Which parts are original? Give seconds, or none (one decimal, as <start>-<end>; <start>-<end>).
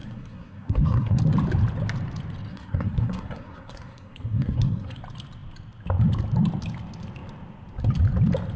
1.2-2.5; 5.0-8.6